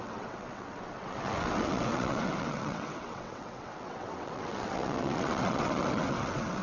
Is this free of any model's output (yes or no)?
no